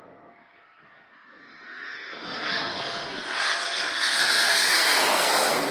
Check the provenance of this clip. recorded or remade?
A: remade